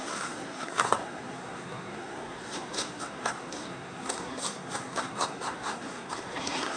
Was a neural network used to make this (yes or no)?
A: yes